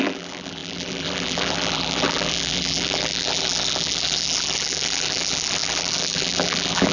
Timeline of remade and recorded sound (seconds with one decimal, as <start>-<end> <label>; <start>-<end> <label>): 0.0-6.9 remade